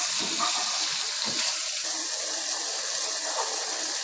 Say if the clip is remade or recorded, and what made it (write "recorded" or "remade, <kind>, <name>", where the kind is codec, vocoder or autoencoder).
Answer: recorded